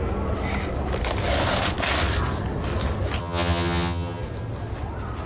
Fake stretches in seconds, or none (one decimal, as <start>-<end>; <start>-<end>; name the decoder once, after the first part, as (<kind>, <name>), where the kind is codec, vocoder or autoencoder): 3.2-4.2 (vocoder, HiFi-GAN)